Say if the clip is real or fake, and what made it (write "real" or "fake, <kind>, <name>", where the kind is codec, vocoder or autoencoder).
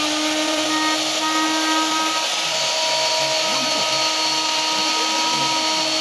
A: real